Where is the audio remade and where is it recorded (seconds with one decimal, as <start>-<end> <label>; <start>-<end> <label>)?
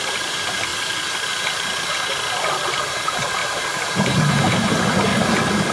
0.0-0.7 remade; 0.7-2.5 recorded; 2.5-5.1 remade; 5.1-5.7 recorded